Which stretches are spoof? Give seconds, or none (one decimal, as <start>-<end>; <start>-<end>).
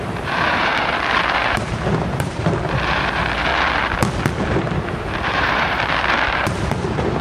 0.0-3.5; 4.5-7.2